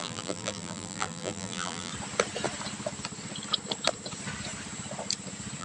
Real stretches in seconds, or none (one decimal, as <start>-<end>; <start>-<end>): 1.9-5.6